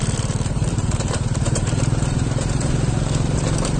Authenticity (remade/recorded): remade